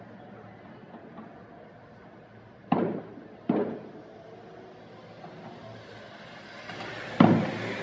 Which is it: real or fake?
real